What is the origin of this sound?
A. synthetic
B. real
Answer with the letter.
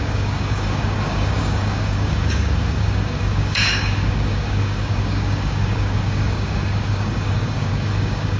A